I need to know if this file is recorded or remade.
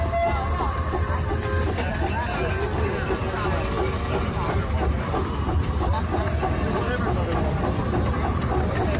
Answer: recorded